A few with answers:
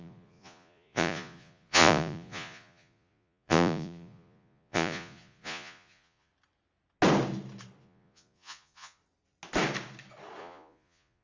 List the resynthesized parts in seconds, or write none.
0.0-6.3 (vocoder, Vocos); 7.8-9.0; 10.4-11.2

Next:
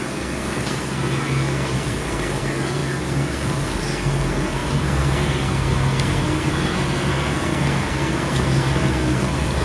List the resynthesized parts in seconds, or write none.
0.0-9.6 (codec, SNAC)

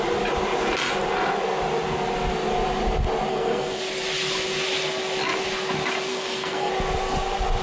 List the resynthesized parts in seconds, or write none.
3.3-3.8 (codec, SNAC); 6.1-6.7

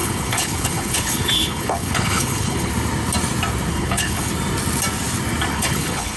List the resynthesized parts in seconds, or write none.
0.0-2.7 (codec, HILCodec); 3.7-4.3; 5.5-6.2

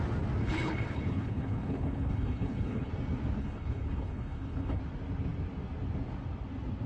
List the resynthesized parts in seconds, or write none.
0.4-2.9 (codec, HILCodec); 3.4-4.8

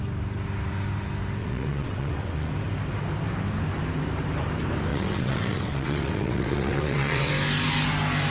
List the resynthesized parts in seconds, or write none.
1.4-2.5 (vocoder, WaveNeXt); 4.9-7.3

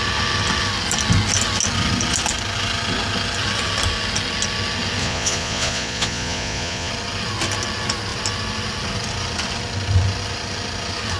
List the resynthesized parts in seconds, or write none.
5.0-6.9 (vocoder, Vocos)

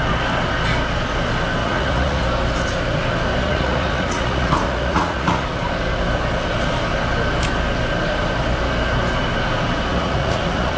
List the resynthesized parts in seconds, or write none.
1.6-2.2 (vocoder, Vocos); 3.4-5.6; 9.9-10.8